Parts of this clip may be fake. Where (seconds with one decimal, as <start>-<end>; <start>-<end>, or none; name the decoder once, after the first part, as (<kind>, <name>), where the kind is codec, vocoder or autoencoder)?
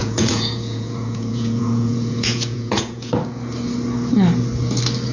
0.0-3.1 (vocoder, Vocos)